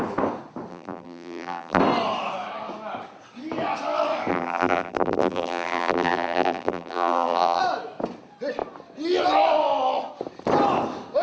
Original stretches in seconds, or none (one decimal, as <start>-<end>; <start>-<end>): 0.0-0.7; 1.8-4.3; 7.6-11.2